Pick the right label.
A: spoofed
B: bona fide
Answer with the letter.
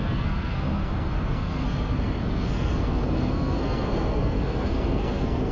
A